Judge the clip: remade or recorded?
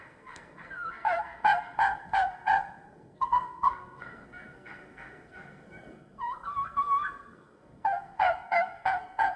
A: remade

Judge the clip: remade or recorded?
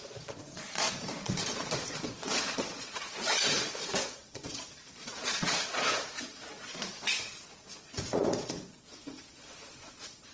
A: remade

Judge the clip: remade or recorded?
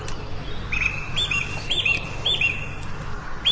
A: recorded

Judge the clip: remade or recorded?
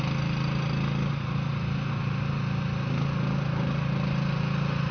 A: recorded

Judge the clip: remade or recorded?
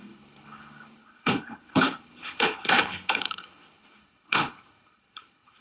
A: remade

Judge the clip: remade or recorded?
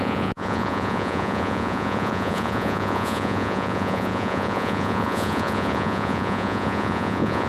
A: remade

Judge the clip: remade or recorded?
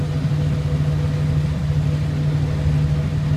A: recorded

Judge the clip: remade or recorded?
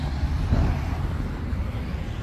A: recorded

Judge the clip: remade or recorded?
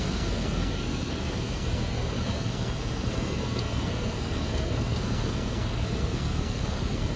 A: remade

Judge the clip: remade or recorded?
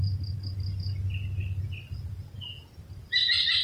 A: recorded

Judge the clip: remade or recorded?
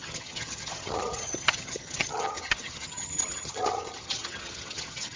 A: remade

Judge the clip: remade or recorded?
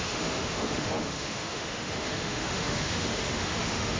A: remade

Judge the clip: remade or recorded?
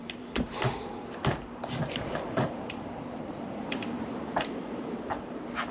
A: remade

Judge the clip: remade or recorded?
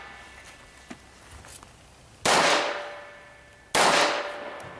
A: recorded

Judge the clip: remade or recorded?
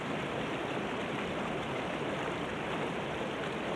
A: recorded